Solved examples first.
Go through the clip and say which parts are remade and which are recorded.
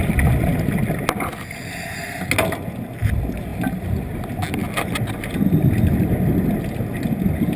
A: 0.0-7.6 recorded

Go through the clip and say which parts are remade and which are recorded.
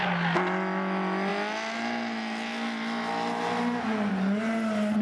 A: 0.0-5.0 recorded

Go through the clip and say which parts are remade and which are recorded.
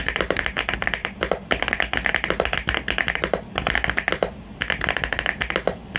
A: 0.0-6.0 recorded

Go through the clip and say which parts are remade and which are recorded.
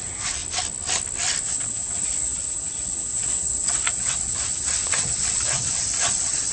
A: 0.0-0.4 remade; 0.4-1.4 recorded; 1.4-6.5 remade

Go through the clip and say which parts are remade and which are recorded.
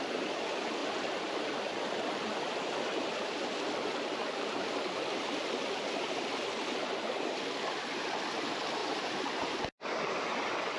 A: 0.0-0.8 recorded; 0.8-1.3 remade; 1.3-8.8 recorded; 8.8-9.6 remade; 9.6-10.8 recorded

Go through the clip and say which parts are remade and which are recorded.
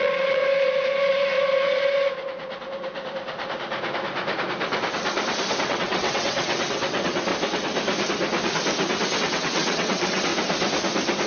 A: 0.0-0.4 remade; 0.4-5.5 recorded; 5.5-7.3 remade; 7.3-9.2 recorded; 9.2-10.3 remade; 10.3-11.3 recorded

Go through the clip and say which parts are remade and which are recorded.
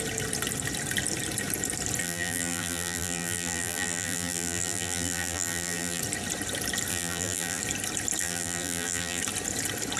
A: 0.0-2.0 recorded; 2.0-6.0 remade; 6.0-6.9 recorded; 6.9-7.6 remade; 7.6-8.2 recorded; 8.2-9.2 remade; 9.2-10.0 recorded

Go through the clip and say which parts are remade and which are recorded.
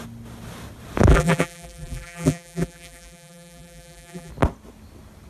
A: 0.0-1.1 recorded; 1.1-4.3 remade; 4.3-5.3 recorded